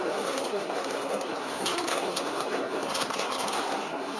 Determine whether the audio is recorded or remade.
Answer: remade